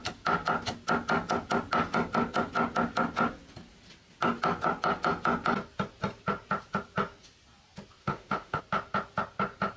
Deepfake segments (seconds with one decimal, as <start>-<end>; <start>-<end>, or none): 8.0-8.6